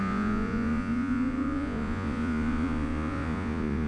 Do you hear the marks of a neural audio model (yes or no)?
yes